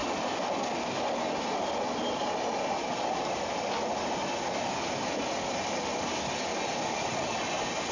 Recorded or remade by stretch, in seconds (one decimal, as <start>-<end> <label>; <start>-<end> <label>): 0.0-7.9 recorded